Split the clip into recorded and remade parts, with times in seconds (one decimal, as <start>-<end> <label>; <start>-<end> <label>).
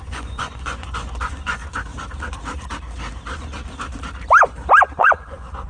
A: 0.0-1.6 remade; 1.6-5.0 recorded; 5.0-5.7 remade